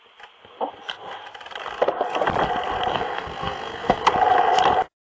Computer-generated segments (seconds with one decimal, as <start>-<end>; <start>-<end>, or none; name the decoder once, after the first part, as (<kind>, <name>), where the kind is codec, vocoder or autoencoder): 2.9-4.1 (codec, SNAC)